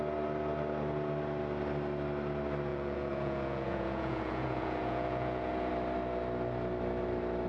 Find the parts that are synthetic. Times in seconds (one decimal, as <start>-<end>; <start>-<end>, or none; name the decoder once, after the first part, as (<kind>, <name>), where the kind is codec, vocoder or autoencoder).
2.7-5.7 (vocoder, Vocos)